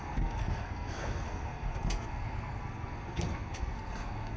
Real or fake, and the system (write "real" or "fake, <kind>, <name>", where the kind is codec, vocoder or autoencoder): fake, codec, SNAC